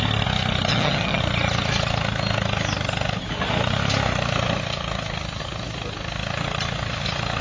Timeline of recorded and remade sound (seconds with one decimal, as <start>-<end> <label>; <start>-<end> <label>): 0.0-0.7 recorded; 0.7-1.2 remade; 1.2-7.4 recorded